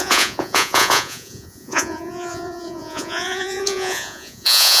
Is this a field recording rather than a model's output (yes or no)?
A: no